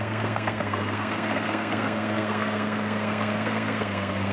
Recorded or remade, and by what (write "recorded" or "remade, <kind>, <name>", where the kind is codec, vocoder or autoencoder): remade, codec, SNAC